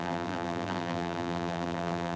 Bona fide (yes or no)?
no